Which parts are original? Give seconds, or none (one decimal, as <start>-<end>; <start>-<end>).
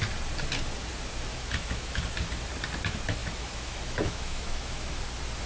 0.0-1.3; 2.0-3.2; 5.0-5.5